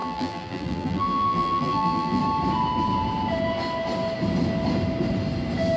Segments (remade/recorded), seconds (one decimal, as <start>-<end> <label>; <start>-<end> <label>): 0.0-2.2 remade; 2.2-5.8 recorded